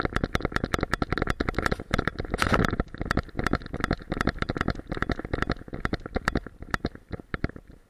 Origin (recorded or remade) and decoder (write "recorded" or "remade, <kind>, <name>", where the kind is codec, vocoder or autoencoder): recorded